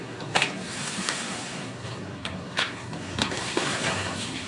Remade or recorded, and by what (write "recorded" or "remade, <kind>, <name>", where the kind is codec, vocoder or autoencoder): remade, codec, SNAC